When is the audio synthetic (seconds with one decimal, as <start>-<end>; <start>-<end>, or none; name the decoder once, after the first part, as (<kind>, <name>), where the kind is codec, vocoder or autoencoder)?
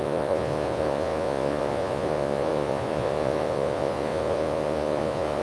0.0-5.4 (vocoder, Vocos)